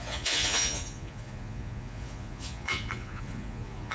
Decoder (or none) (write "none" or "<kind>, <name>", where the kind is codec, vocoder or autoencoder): vocoder, Vocos